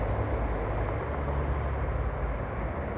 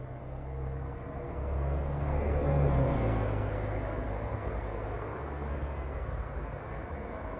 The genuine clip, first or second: first